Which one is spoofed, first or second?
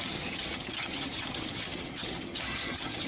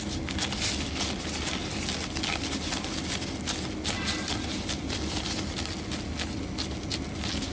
first